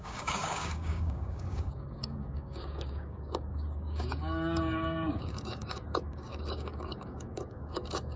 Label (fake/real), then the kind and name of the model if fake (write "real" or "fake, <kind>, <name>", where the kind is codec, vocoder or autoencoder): fake, codec, DAC